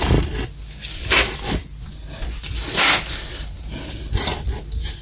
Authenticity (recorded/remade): recorded